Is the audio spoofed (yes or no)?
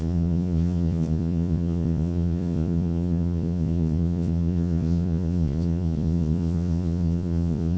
yes